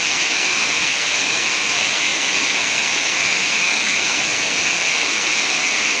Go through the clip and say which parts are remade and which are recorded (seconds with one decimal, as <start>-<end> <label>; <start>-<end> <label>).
0.0-6.0 remade